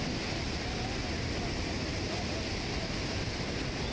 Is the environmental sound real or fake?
real